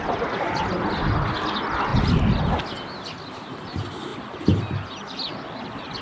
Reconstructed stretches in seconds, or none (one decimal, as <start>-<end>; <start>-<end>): none